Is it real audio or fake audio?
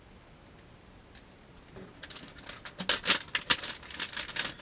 real